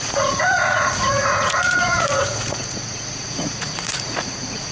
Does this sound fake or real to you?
fake